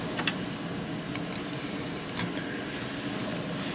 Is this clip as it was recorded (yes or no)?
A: yes